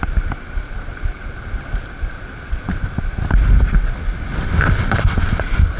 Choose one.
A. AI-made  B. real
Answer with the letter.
B